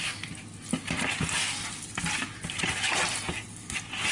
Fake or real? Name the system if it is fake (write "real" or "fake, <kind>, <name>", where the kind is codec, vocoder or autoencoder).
real